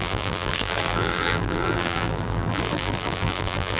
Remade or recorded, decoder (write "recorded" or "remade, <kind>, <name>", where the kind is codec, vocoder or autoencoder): remade, vocoder, BigVGAN v2